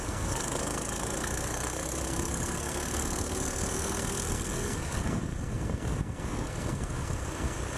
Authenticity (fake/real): fake